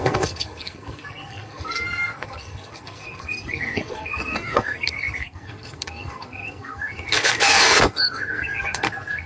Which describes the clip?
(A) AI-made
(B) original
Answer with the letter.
A